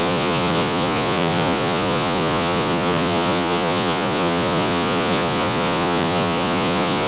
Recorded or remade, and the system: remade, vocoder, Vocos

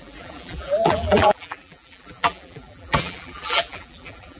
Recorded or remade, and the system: remade, vocoder, BigVGAN v2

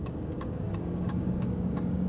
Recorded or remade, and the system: remade, codec, DAC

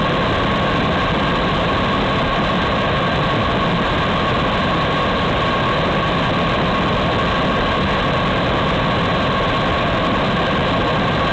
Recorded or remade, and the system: recorded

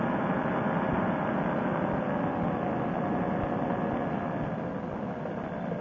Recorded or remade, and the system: recorded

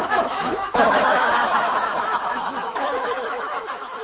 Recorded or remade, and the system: remade, autoencoder, DAC-VAE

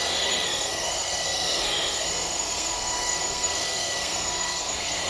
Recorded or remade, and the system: remade, codec, SNAC